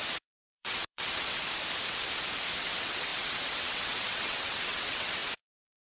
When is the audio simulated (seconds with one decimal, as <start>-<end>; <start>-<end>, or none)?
0.0-1.4; 2.6-6.0